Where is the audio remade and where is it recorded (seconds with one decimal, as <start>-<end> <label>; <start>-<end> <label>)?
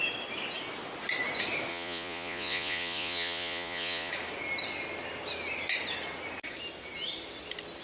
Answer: 0.0-1.7 recorded; 1.7-4.1 remade; 4.1-7.8 recorded